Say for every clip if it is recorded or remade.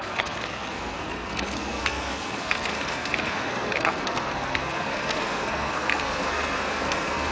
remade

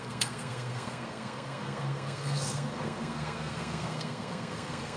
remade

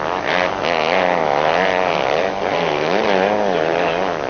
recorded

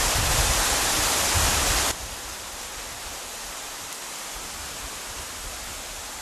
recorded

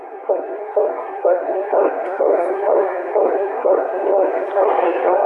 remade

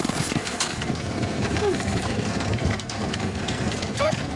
remade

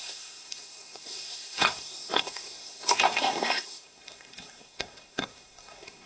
remade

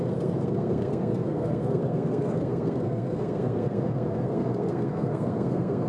remade